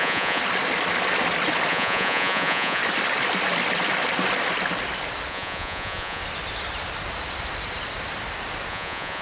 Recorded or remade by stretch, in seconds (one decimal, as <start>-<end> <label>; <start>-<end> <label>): 0.0-0.4 remade; 0.4-1.7 recorded; 1.7-2.8 remade; 2.8-5.3 recorded; 5.3-6.2 remade; 6.2-8.7 recorded; 8.7-9.2 remade

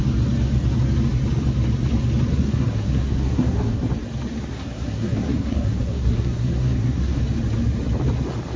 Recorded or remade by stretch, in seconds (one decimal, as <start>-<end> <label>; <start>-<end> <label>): 0.0-2.3 recorded; 2.3-3.9 remade; 3.9-4.5 recorded; 4.5-7.2 remade; 7.2-8.6 recorded

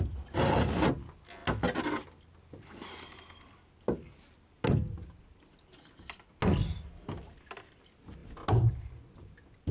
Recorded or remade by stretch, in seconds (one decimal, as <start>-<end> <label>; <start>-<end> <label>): 0.0-9.7 recorded

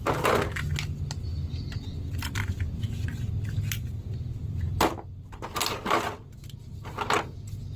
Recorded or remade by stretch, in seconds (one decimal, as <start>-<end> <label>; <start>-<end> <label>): 0.0-7.8 recorded

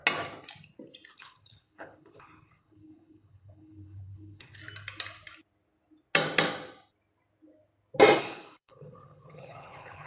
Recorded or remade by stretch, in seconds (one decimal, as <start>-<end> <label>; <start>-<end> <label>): 0.0-1.1 recorded; 1.1-4.6 remade; 4.6-8.2 recorded; 8.2-10.1 remade

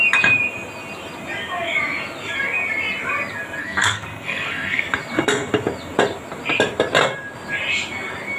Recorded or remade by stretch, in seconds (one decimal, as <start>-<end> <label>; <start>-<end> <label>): 0.0-3.6 recorded; 3.6-4.8 remade; 4.8-8.4 recorded